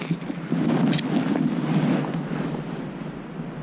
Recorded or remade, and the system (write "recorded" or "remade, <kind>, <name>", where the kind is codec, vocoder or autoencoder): recorded